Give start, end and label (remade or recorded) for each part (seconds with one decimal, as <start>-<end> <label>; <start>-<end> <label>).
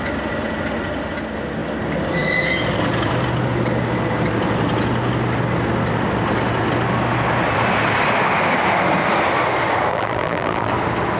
0.0-9.9 recorded; 9.9-10.7 remade; 10.7-11.2 recorded